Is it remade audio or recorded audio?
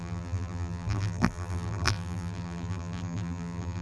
remade